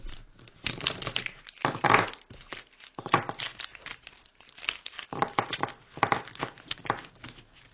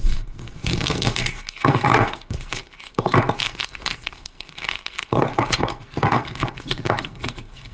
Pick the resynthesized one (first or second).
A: second